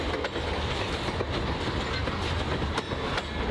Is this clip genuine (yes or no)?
yes